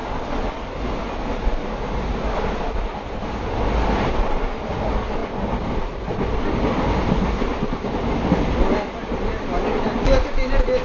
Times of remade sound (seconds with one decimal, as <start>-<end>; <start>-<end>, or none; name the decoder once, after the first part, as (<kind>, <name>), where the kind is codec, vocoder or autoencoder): none